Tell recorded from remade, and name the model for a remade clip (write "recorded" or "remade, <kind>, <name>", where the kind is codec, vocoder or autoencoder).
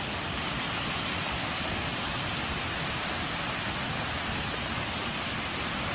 recorded